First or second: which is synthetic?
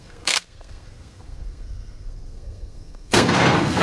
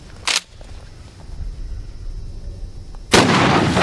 first